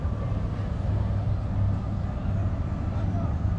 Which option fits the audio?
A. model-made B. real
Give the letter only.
B